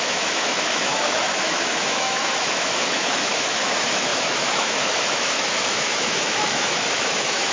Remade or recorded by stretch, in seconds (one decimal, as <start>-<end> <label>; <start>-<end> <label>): 0.0-7.5 remade